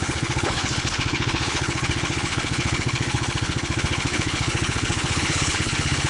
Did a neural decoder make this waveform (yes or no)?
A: yes